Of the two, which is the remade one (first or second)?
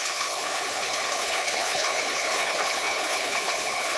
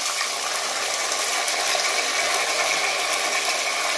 first